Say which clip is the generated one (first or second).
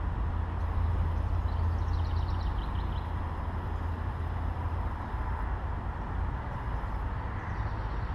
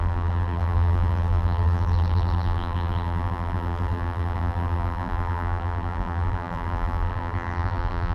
second